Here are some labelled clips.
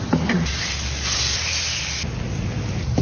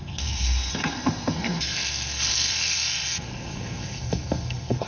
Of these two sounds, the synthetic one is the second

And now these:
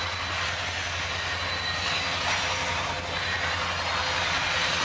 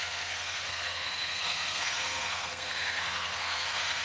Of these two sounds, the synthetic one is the second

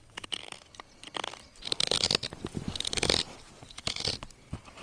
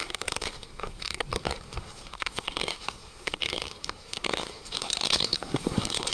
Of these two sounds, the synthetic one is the second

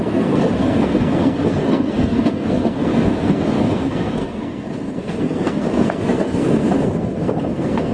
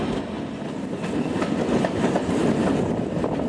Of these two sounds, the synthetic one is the first